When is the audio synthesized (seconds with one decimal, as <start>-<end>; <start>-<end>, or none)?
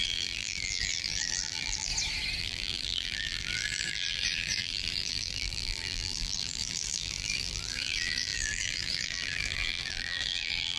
0.0-1.9; 2.4-10.8